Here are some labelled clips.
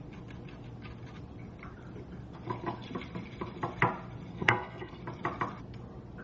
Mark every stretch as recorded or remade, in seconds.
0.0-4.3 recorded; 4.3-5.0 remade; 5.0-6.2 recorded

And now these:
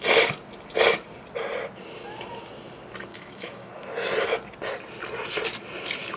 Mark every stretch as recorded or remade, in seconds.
0.0-3.1 recorded; 3.1-3.7 remade; 3.7-6.2 recorded

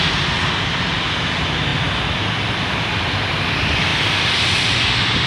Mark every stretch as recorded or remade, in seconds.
0.0-5.3 recorded

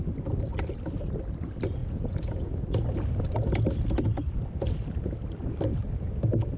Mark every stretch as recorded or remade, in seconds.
0.0-1.8 recorded; 1.8-2.6 remade; 2.6-6.6 recorded

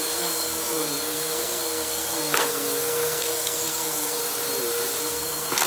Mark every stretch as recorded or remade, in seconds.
0.0-4.2 remade; 4.2-5.0 recorded; 5.0-5.7 remade

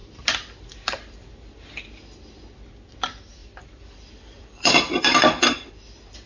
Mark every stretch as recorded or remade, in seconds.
0.0-3.4 recorded; 3.4-5.7 remade; 5.7-6.3 recorded